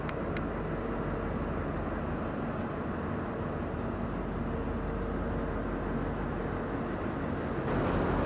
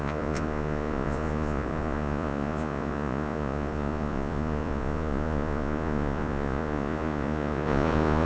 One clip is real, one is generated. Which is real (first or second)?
first